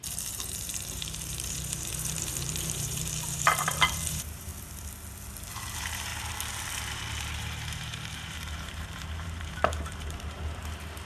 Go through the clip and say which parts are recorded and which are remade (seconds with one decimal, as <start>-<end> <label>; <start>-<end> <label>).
0.0-4.5 remade; 4.5-5.5 recorded; 5.5-6.1 remade; 6.1-7.4 recorded; 7.4-11.1 remade

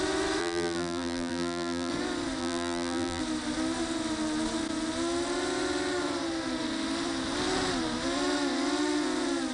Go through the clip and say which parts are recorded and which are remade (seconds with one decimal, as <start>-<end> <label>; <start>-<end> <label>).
0.0-0.4 recorded; 0.4-1.9 remade; 1.9-2.4 recorded; 2.4-3.2 remade; 3.2-9.5 recorded

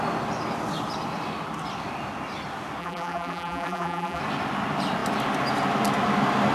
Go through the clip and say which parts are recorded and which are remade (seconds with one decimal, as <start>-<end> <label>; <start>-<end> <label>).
0.0-2.8 recorded; 2.8-4.2 remade; 4.2-6.5 recorded

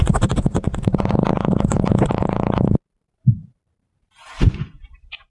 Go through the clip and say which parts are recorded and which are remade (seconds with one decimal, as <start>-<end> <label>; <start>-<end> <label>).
0.0-5.3 remade

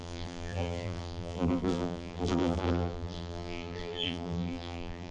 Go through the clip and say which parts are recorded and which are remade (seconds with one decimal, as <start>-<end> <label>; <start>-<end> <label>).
0.0-5.1 remade

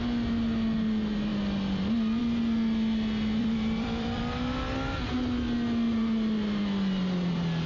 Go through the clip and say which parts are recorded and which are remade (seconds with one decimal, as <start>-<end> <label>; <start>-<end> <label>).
0.0-3.4 recorded; 3.4-4.2 remade; 4.2-7.7 recorded

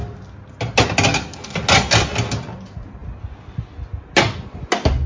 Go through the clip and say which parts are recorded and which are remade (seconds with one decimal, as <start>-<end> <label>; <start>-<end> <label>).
0.0-5.1 recorded

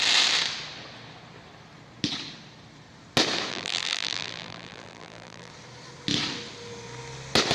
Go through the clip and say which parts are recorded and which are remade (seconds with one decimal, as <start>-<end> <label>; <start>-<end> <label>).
0.0-3.5 recorded; 3.5-5.5 remade; 5.5-7.5 recorded